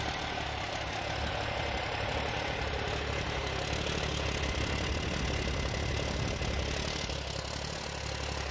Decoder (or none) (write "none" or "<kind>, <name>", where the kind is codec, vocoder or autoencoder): none